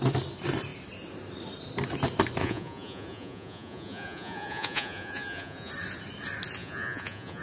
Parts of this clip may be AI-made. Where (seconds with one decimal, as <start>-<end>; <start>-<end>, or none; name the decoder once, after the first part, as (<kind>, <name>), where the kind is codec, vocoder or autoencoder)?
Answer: 2.4-5.7 (vocoder, Vocos); 6.6-7.4